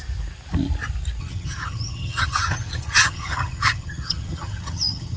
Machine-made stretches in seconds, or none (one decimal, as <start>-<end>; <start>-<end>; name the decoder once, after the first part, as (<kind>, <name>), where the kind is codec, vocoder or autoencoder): 1.2-5.2 (vocoder, HiFi-GAN)